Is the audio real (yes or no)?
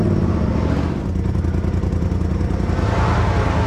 yes